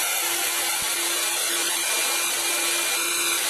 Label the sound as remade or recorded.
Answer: recorded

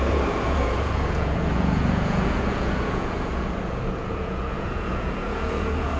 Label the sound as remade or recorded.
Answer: remade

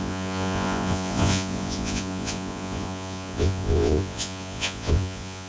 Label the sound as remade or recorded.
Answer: remade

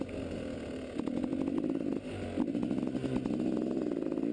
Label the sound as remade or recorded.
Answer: recorded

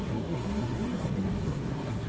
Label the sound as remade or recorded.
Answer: remade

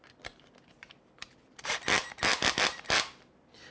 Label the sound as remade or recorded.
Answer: recorded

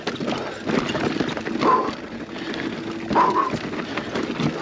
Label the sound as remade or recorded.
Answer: recorded